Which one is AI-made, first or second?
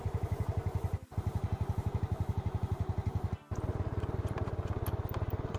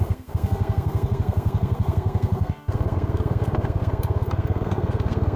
second